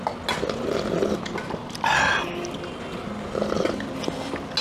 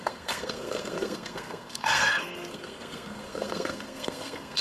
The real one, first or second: first